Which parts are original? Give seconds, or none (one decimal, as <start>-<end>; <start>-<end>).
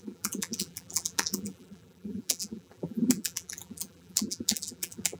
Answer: none